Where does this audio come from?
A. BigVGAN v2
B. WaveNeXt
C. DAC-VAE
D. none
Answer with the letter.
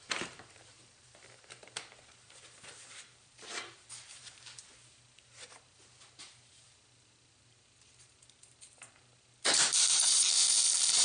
A